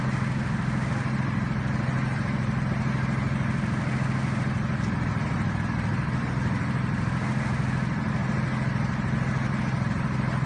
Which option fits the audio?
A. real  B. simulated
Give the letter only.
A